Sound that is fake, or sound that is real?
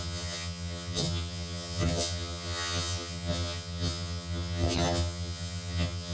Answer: fake